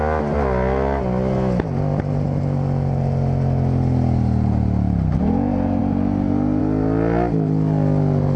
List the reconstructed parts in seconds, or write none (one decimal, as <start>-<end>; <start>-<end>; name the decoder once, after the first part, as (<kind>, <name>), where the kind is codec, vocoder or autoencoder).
none